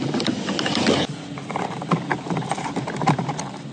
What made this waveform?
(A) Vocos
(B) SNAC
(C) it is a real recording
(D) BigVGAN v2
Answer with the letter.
C